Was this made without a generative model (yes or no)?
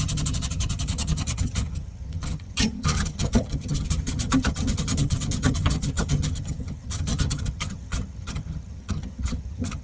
no